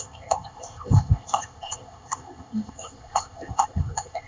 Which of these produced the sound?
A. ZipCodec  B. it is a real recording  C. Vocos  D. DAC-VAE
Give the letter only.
A